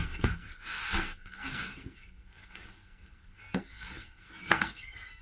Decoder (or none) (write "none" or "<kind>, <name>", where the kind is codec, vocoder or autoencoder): codec, SNAC